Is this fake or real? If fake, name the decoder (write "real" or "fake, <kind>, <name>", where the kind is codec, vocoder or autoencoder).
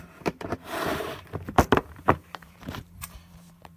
fake, vocoder, BigVGAN v2